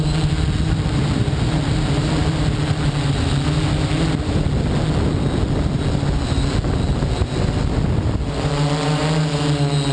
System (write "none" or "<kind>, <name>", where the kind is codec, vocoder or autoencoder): none